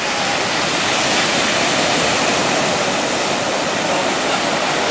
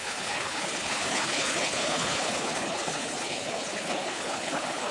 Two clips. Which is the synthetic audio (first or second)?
second